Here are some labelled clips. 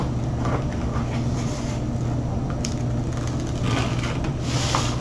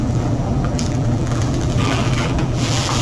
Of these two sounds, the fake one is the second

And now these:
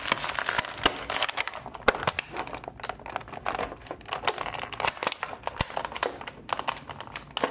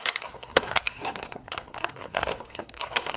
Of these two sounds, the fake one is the second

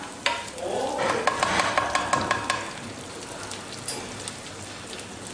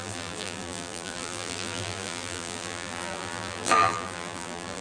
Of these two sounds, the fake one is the second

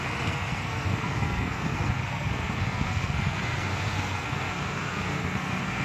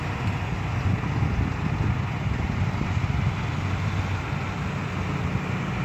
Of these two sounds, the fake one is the first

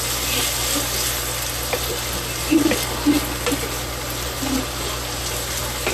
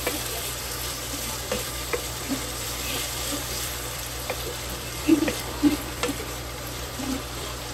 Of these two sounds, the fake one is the second